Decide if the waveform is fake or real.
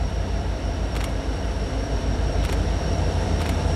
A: fake